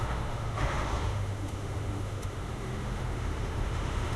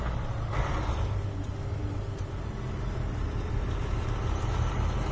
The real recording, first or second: second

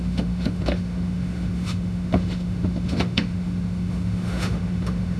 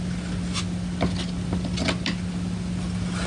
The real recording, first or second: second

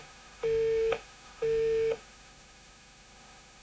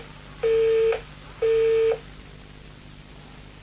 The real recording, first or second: second